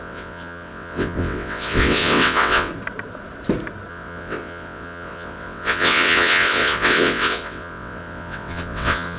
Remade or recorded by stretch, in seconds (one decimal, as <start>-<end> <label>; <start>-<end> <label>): 0.0-2.7 remade; 2.7-3.9 recorded; 3.9-9.2 remade